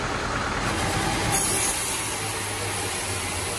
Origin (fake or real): real